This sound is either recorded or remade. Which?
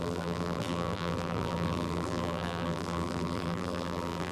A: remade